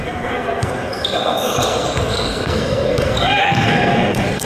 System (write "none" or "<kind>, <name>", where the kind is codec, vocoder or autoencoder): codec, SNAC